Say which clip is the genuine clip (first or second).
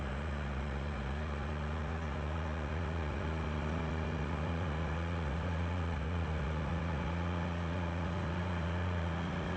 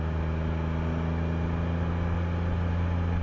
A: second